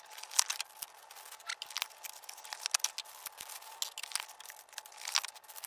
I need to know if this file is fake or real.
real